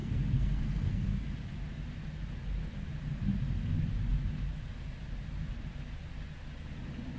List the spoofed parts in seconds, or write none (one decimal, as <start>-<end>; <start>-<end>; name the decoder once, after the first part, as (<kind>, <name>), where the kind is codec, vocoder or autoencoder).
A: 0.0-1.2 (codec, SNAC)